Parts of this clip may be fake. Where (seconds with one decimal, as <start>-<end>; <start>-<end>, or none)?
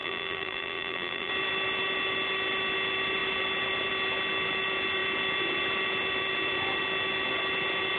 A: 0.0-1.3